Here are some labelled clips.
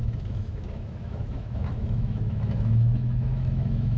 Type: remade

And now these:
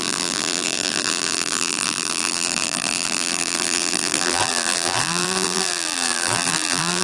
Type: remade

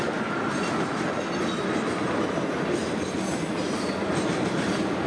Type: recorded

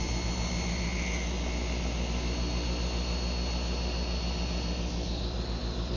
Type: recorded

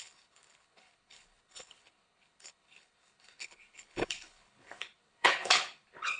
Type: remade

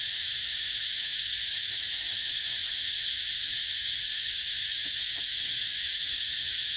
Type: remade